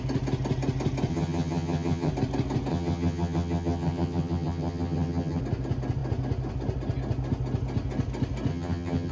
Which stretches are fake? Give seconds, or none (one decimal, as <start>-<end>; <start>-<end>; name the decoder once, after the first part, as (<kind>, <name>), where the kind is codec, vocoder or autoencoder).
1.1-2.1 (vocoder, HiFi-GAN); 2.7-5.4; 8.5-9.1